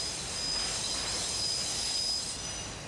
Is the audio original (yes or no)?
yes